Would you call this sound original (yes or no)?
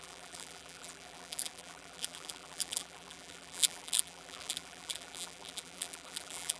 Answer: no